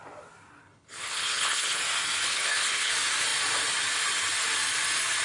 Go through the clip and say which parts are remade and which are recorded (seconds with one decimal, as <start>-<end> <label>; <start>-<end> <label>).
0.0-0.6 recorded; 0.6-1.8 remade; 1.8-2.3 recorded; 2.3-2.9 remade; 2.9-5.2 recorded